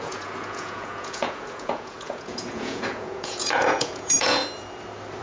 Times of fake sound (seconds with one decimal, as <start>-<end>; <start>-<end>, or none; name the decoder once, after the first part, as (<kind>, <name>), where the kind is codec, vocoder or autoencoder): 0.0-4.4 (vocoder, Vocos)